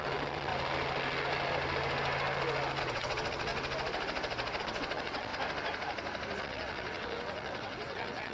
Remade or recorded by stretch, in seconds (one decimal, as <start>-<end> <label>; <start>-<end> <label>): 0.0-0.5 remade; 0.5-2.8 recorded; 2.8-3.5 remade; 3.5-4.6 recorded; 4.6-5.3 remade; 5.3-6.4 recorded; 6.4-8.3 remade